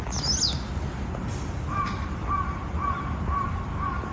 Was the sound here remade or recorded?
recorded